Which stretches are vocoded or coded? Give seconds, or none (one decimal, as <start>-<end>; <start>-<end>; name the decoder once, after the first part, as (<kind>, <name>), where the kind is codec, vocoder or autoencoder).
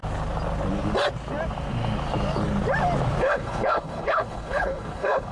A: 3.2-5.3 (codec, HILCodec)